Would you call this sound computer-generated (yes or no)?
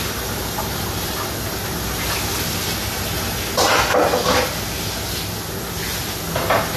no